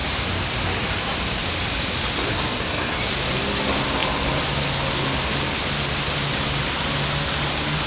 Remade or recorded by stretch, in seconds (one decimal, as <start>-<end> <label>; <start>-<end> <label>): 0.0-2.3 recorded; 2.3-3.1 remade; 3.1-7.9 recorded